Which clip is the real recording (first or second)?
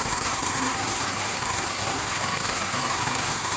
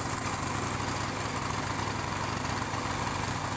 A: second